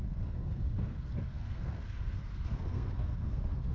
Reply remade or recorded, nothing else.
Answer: remade